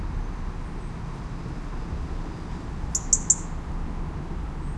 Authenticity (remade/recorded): recorded